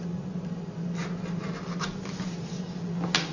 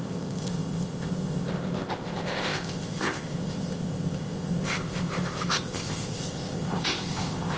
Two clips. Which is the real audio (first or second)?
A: first